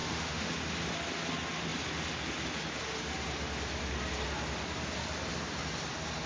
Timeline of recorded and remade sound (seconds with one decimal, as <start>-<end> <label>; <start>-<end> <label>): 0.0-0.5 remade; 0.5-6.3 recorded